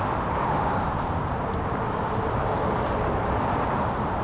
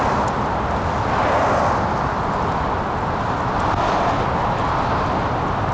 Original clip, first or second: second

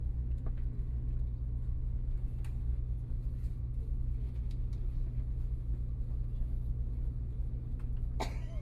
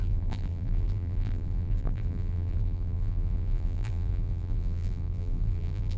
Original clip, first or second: first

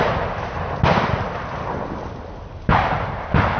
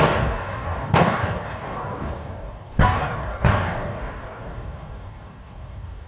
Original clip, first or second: first